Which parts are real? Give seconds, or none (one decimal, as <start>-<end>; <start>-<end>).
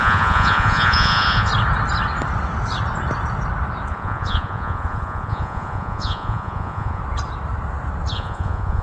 1.5-3.9; 7.0-8.1